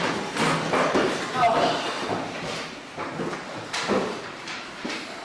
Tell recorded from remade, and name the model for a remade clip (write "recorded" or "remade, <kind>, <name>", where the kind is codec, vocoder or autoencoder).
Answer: remade, vocoder, BigVGAN v2